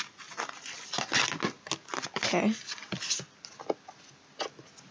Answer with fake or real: real